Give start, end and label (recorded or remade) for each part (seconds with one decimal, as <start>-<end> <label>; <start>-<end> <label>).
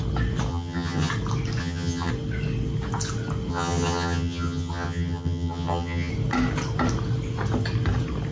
0.0-0.5 recorded; 0.5-1.1 remade; 1.1-1.6 recorded; 1.6-2.1 remade; 2.1-3.5 recorded; 3.5-6.1 remade; 6.1-8.3 recorded